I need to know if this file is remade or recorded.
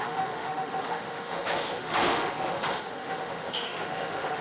remade